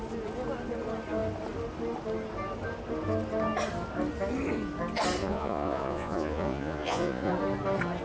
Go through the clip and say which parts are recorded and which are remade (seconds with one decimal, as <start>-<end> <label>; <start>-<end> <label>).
0.0-5.2 recorded; 5.2-7.3 remade; 7.3-8.0 recorded